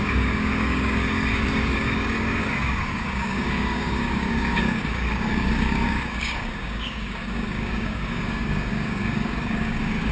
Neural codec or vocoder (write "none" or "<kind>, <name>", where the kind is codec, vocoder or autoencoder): codec, DAC